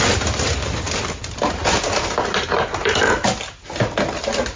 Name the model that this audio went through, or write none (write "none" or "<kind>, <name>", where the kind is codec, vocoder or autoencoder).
none